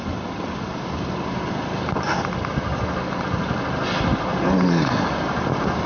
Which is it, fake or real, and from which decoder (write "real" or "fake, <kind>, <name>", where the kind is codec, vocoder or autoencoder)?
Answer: real